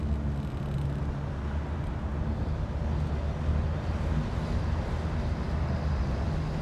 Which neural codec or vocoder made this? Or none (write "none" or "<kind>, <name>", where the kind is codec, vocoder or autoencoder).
none